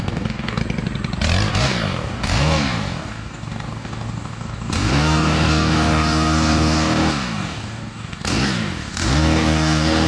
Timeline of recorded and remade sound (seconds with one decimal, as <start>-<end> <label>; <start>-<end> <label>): 0.0-0.6 remade; 0.6-1.5 recorded; 1.5-10.1 remade